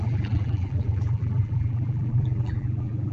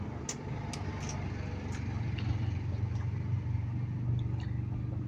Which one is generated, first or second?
first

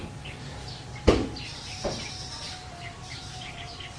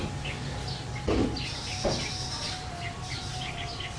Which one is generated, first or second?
first